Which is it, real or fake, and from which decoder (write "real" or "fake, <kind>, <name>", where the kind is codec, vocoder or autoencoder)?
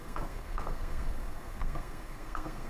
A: fake, codec, SNAC